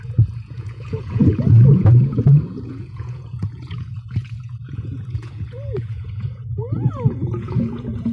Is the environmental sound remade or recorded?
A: remade